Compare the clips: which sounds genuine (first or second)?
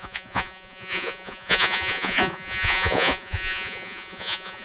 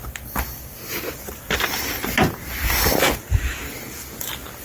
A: second